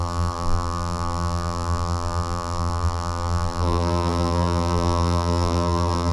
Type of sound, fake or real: fake